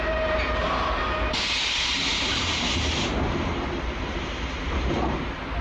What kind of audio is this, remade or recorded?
remade